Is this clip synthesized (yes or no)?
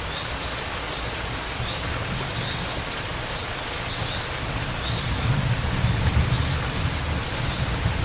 no